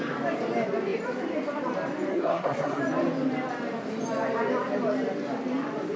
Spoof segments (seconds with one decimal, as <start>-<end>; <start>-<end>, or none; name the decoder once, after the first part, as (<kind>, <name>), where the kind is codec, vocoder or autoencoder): 2.1-2.8 (codec, SNAC)

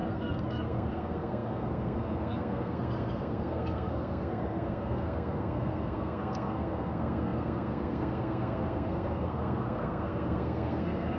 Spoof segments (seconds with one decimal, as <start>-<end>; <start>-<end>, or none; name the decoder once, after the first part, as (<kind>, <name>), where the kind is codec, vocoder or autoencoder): 0.0-11.2 (codec, SNAC)

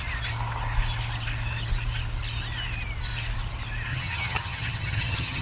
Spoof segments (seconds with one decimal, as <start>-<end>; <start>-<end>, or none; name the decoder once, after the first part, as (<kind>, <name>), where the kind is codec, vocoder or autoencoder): 3.9-5.4 (vocoder, HiFi-GAN)

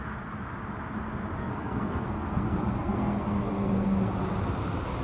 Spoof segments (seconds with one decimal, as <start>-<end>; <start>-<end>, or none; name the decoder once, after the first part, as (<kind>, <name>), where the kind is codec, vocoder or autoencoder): 1.4-4.1 (codec, SNAC)

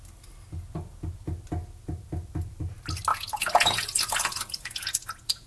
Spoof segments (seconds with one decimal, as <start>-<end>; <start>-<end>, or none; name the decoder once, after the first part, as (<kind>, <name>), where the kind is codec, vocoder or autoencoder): 3.1-5.5 (vocoder, Vocos)

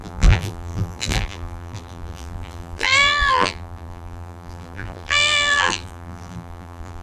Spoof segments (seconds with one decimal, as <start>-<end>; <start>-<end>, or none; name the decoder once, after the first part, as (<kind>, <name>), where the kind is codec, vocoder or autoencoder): 0.0-7.0 (vocoder, BigVGAN v2)